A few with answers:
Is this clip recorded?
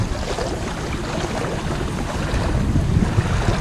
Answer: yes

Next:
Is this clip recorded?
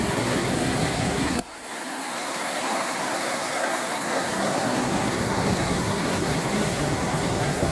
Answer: no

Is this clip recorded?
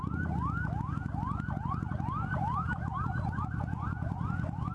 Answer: yes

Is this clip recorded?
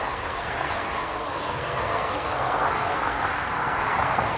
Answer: no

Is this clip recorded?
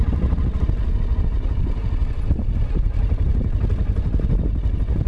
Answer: yes